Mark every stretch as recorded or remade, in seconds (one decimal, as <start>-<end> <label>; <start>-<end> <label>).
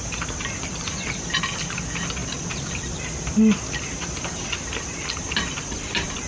0.0-6.3 recorded